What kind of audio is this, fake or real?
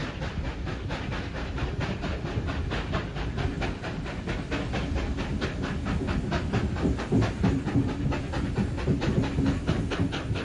real